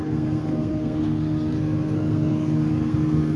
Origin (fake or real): fake